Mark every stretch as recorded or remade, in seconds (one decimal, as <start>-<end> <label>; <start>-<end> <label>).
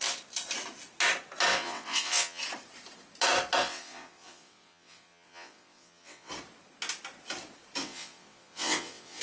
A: 0.0-1.5 recorded; 1.5-2.4 remade; 2.4-3.6 recorded; 3.6-6.3 remade; 6.3-7.8 recorded; 7.8-9.2 remade